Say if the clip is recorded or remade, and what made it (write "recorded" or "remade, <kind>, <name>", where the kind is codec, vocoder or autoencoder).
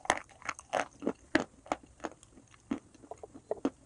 recorded